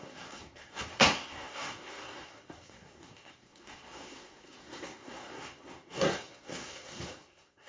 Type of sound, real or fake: fake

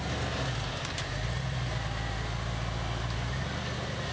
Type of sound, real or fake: real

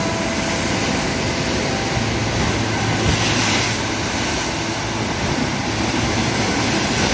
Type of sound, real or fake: real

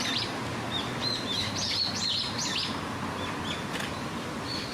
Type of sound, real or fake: real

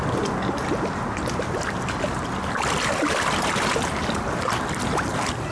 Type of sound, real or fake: real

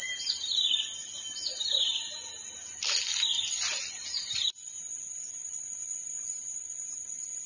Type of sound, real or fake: real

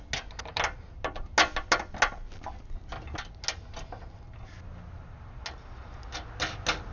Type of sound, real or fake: real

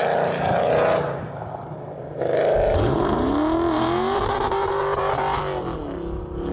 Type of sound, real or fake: real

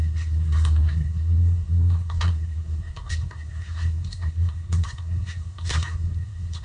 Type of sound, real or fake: fake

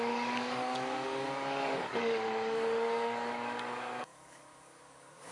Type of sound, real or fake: fake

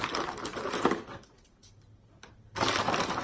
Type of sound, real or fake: real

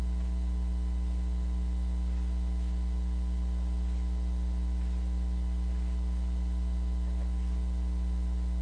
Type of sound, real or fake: real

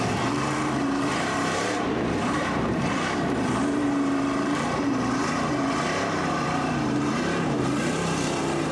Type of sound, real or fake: fake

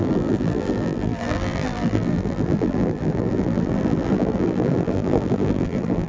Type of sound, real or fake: fake